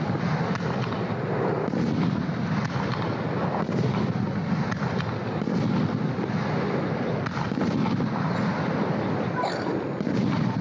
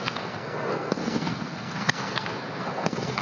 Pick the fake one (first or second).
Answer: second